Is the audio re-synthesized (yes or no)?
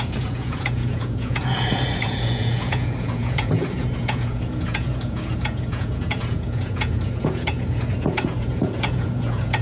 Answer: yes